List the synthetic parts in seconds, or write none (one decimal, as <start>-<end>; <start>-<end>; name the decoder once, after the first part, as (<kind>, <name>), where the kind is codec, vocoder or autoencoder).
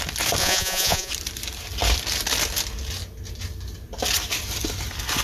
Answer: 0.4-1.1 (vocoder, Vocos)